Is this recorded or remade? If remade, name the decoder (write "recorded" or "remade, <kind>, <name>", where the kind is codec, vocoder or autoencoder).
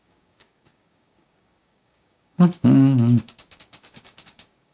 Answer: remade, codec, DAC